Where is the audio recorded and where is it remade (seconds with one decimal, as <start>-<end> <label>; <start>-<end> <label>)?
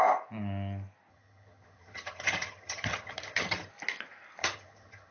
0.0-1.1 recorded; 1.1-3.7 remade; 3.7-4.4 recorded; 4.4-5.1 remade